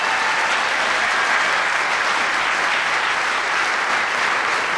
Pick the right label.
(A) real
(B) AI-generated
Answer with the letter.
A